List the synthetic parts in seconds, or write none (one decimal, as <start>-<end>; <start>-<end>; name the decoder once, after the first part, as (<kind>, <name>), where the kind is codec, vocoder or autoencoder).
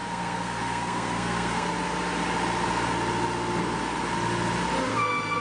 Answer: 0.0-1.7 (codec, SNAC); 4.9-5.4